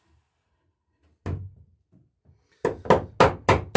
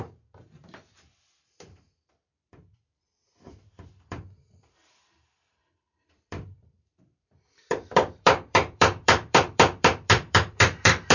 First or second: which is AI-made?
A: second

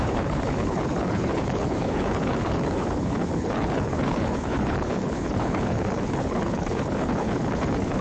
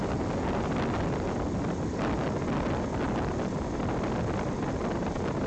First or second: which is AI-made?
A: first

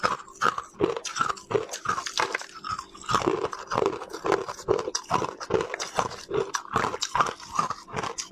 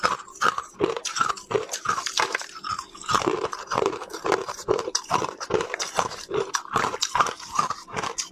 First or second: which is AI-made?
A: second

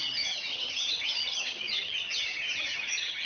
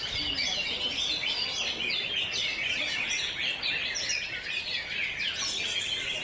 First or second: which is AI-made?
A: first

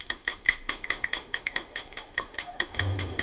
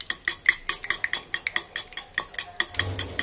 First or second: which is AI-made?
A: first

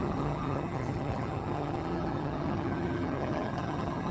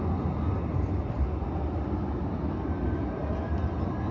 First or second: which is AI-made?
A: first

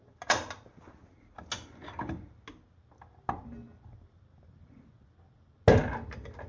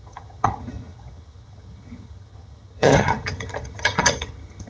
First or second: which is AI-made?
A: second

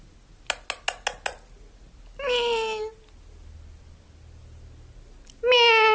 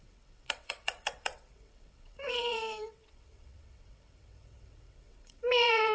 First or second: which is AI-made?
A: second